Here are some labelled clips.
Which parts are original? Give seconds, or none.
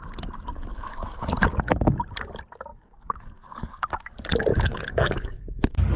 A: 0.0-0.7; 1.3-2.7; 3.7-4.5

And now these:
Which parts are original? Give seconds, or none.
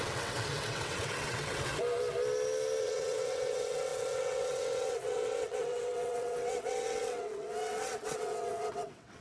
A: 1.7-2.8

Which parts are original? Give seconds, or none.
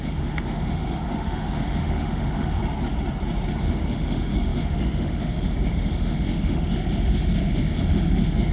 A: 2.6-3.6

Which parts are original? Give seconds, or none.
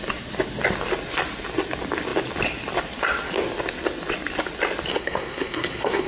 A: 0.0-4.9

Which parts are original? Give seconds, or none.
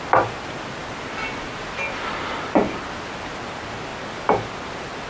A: 0.0-5.1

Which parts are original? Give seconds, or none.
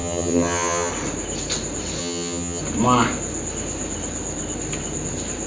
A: 0.9-2.0; 2.6-5.5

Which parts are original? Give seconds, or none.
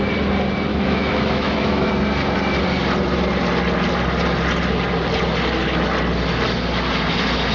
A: 0.0-0.7; 1.9-7.5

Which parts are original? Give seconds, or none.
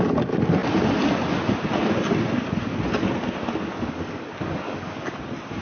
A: 0.0-3.7; 5.1-5.6